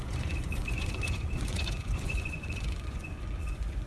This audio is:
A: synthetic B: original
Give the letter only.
A